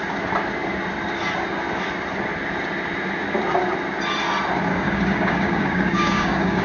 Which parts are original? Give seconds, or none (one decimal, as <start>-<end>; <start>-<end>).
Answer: 0.0-4.7